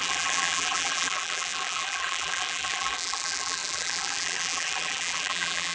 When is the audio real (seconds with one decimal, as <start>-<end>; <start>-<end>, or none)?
none